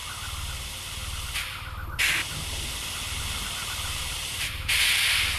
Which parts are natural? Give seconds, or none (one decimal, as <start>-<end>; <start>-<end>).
0.0-3.2